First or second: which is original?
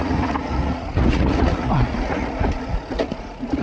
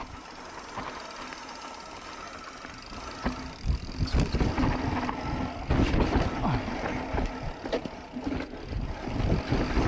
second